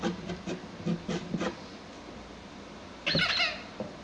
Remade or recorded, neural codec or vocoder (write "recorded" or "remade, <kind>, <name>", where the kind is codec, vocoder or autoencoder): recorded